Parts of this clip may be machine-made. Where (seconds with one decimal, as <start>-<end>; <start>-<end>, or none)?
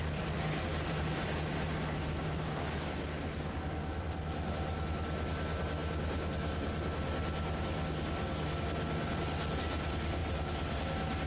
none